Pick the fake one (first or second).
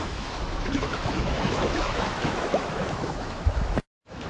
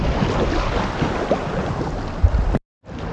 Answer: first